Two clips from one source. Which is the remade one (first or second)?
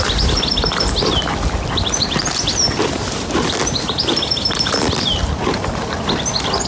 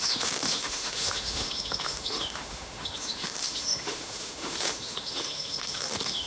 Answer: second